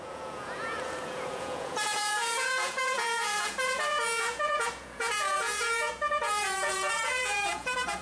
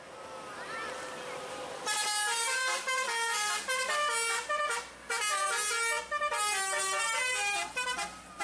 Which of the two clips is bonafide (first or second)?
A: second